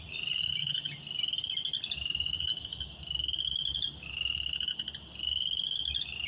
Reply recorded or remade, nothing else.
recorded